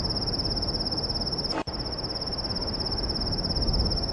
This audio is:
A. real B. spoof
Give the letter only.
A